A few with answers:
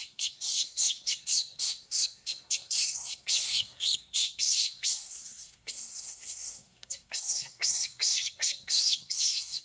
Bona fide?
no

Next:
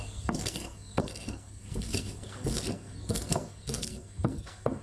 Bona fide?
no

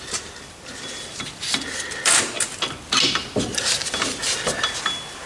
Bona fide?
yes